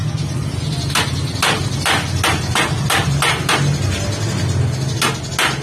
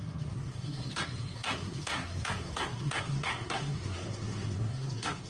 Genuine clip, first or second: first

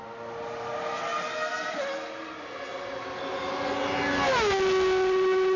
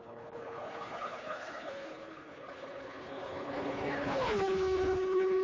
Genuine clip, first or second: first